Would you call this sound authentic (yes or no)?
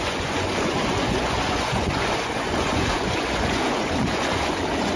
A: no